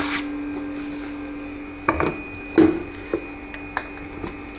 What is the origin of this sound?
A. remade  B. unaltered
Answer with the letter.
B